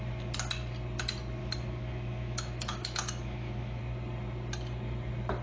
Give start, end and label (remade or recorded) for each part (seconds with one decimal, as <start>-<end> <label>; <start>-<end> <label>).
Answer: 0.0-1.4 recorded; 1.4-3.8 remade; 3.8-5.4 recorded